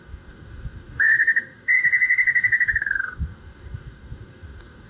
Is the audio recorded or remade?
remade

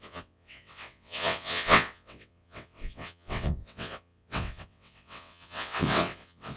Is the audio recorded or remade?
remade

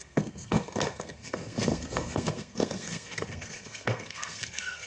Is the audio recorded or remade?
remade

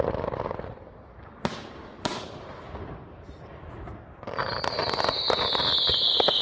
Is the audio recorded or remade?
recorded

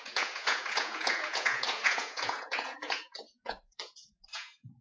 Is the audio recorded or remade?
remade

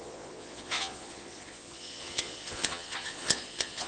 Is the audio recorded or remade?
remade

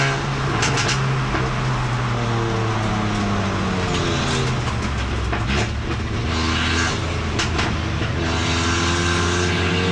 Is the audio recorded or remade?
recorded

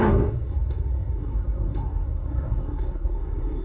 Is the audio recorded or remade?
remade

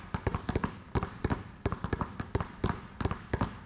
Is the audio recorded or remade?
recorded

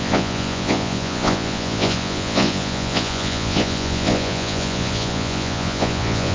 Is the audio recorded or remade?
remade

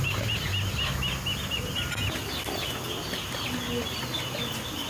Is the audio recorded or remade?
recorded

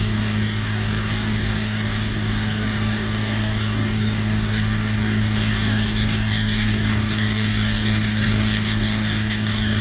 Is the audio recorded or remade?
remade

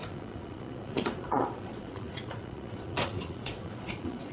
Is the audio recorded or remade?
remade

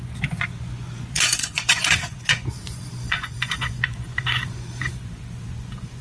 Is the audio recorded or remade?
remade